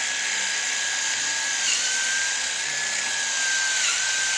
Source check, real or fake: real